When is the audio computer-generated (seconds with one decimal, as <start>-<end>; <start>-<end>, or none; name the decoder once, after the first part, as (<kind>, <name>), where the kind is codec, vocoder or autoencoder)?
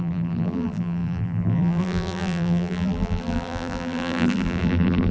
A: 0.0-5.1 (vocoder, BigVGAN v2)